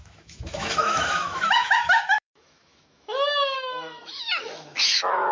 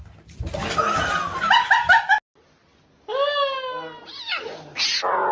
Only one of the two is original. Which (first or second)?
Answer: second